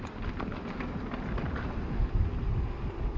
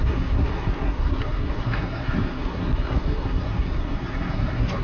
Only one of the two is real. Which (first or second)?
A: first